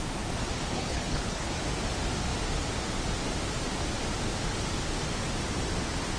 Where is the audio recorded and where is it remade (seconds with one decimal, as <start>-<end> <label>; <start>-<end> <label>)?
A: 0.0-0.7 recorded; 0.7-1.5 remade; 1.5-6.2 recorded